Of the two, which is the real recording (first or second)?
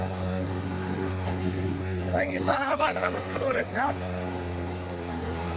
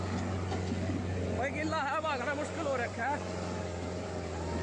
second